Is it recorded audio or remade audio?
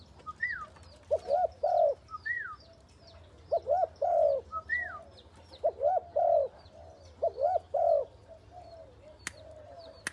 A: recorded